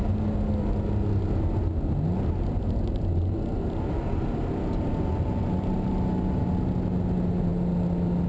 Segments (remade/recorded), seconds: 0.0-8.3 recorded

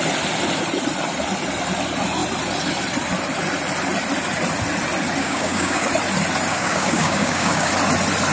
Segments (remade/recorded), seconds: 0.0-5.2 recorded; 5.2-5.9 remade; 5.9-6.5 recorded; 6.5-7.7 remade; 7.7-8.3 recorded

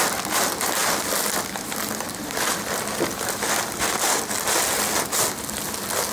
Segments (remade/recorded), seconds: 0.0-0.8 recorded; 0.8-4.5 remade; 4.5-6.1 recorded

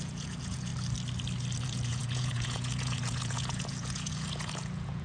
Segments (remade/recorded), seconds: 0.0-0.7 remade; 0.7-1.6 recorded; 1.6-5.0 remade

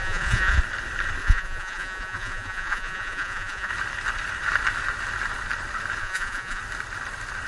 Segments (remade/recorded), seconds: 0.0-0.6 remade; 0.6-1.2 recorded; 1.2-3.7 remade; 3.7-6.0 recorded; 6.0-6.6 remade; 6.6-7.5 recorded